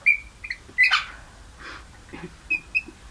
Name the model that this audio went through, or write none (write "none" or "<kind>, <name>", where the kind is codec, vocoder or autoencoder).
none